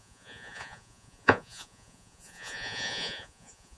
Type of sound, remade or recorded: remade